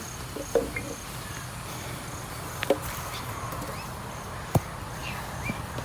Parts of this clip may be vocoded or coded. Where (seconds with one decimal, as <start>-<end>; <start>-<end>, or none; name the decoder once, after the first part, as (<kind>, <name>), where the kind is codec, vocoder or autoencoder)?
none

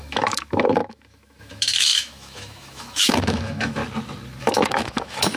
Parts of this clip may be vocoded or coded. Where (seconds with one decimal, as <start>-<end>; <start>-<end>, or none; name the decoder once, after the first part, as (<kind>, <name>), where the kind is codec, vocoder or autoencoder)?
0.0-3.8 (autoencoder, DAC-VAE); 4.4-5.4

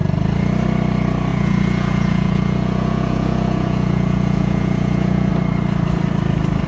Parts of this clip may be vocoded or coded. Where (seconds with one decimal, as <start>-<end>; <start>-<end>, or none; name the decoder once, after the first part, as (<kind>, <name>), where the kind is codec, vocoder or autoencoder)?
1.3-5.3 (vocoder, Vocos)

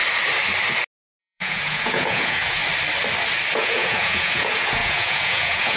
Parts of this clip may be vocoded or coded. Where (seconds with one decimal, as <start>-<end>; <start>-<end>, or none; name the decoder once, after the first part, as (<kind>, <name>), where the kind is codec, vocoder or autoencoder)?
1.2-2.6 (vocoder, Vocos); 3.5-5.8